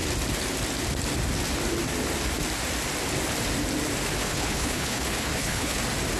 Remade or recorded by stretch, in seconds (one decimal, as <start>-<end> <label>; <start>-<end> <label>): 0.0-4.2 recorded; 4.2-5.8 remade; 5.8-6.2 recorded